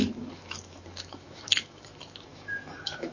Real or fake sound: fake